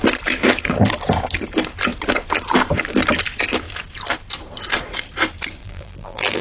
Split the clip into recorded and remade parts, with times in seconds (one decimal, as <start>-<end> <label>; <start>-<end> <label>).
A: 0.0-5.6 recorded; 5.6-6.4 remade

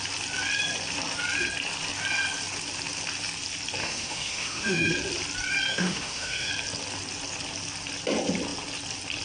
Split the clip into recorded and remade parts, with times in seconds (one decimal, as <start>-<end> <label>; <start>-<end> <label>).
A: 0.0-3.8 recorded; 3.8-4.9 remade; 4.9-5.7 recorded; 5.7-6.5 remade; 6.5-9.2 recorded

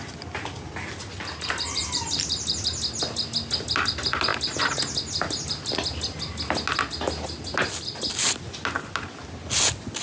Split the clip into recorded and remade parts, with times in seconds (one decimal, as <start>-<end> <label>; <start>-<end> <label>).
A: 0.0-10.0 recorded

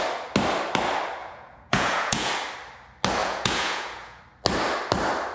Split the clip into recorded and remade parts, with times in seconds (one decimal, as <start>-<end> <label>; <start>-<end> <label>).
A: 0.0-1.2 recorded; 1.2-2.3 remade; 2.3-3.2 recorded; 3.2-4.2 remade; 4.2-5.3 recorded